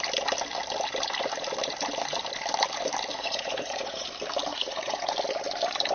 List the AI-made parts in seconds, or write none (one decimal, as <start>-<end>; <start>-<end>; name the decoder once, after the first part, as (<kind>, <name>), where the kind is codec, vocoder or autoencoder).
3.1-4.1 (vocoder, Vocos); 4.5-5.1